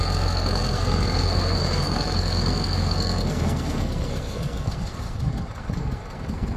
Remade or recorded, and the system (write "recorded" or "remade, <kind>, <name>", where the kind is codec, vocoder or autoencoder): remade, codec, SNAC